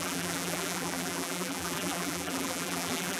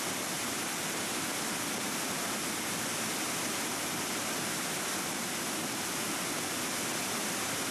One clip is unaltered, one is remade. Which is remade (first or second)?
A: first